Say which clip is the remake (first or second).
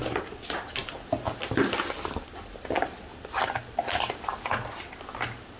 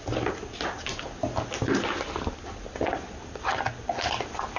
first